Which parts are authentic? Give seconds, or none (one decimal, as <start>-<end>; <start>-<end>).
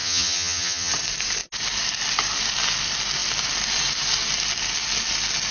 0.9-5.5